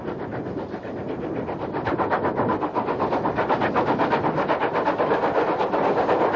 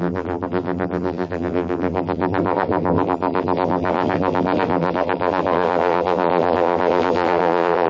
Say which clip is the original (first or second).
first